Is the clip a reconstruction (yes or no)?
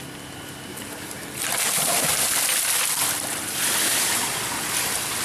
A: no